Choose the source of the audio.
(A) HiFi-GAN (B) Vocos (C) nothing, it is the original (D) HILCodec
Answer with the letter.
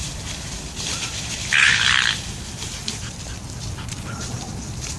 C